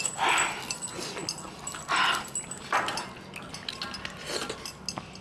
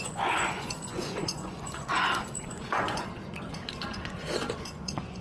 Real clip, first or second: first